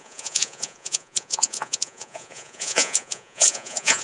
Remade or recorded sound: remade